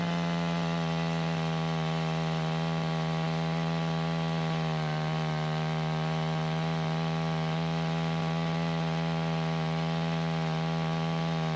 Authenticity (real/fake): real